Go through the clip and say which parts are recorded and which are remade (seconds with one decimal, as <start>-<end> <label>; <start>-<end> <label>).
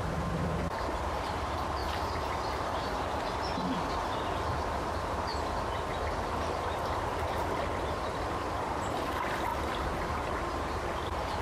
0.0-5.3 remade; 5.3-8.5 recorded; 8.5-9.5 remade; 9.5-10.0 recorded; 10.0-11.4 remade